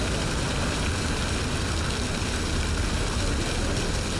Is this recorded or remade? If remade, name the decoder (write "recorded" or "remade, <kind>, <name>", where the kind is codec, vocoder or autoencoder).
recorded